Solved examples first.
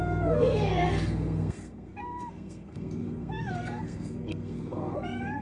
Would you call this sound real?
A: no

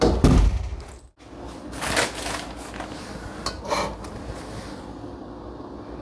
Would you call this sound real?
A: yes